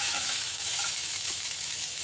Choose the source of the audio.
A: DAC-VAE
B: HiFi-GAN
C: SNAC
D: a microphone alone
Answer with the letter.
A